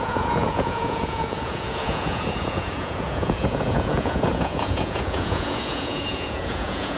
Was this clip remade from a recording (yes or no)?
yes